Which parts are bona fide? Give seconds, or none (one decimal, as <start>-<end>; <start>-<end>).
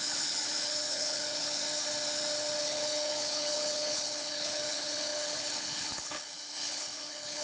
1.6-2.6